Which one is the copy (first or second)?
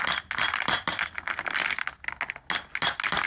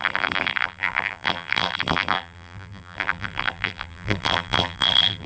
second